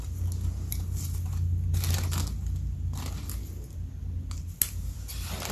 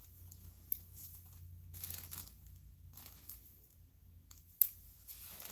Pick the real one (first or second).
first